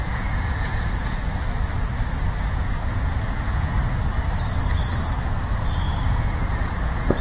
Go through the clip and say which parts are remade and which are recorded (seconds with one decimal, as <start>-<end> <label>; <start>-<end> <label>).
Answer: 0.0-1.2 remade; 1.2-2.4 recorded; 2.4-3.8 remade; 3.8-5.8 recorded; 5.8-7.2 remade